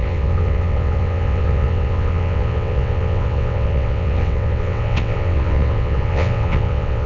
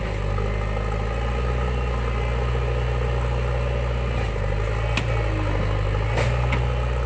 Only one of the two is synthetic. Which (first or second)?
first